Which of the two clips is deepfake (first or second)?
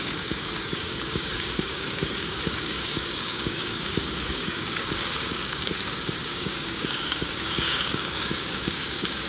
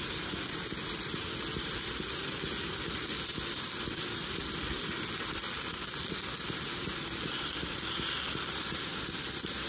first